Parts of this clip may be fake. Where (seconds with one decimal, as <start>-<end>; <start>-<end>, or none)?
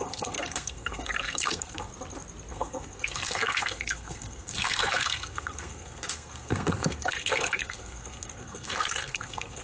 0.0-1.9; 2.5-9.6